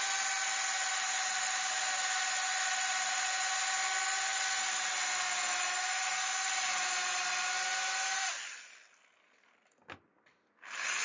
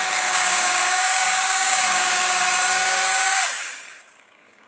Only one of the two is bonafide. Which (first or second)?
first